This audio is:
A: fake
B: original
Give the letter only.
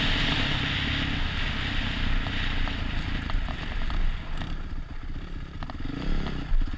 B